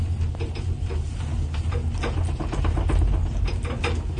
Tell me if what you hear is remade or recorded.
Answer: recorded